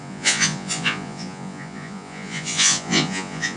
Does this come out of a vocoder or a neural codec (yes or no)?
yes